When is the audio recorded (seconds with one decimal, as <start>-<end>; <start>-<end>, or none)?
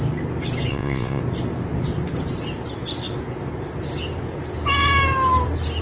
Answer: 0.0-0.7; 1.2-5.8